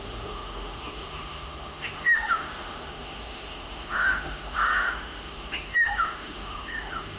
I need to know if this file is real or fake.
fake